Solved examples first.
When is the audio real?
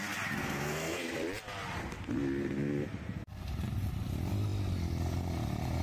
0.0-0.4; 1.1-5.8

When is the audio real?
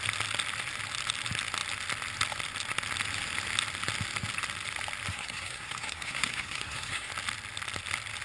0.0-5.1; 7.1-8.2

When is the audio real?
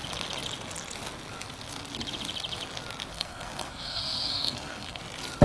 0.0-3.1; 5.0-5.4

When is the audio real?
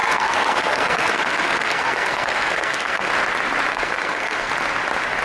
3.1-3.7; 4.5-5.2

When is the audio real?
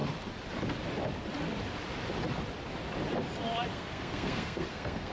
0.0-3.7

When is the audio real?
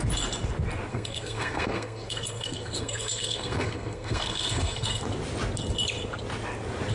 0.0-0.9; 5.0-6.9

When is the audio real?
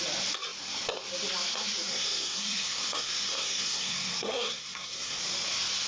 0.0-1.9; 5.2-5.9